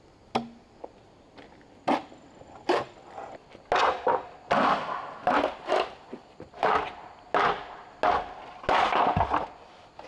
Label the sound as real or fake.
real